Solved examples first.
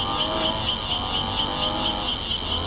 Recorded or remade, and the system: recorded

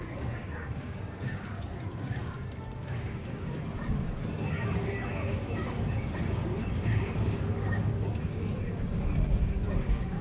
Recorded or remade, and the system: remade, codec, DAC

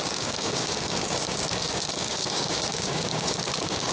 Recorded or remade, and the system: remade, codec, DAC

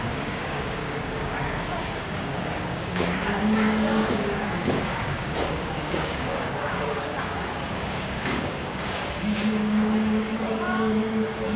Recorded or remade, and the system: remade, codec, DAC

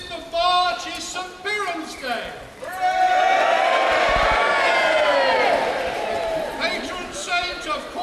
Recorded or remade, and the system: recorded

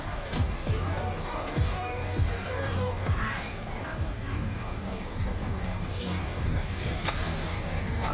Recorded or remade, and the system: remade, codec, DAC